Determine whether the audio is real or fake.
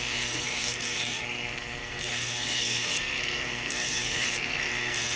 fake